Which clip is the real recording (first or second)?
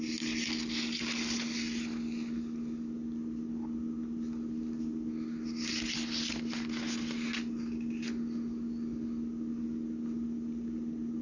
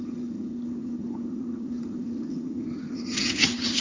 first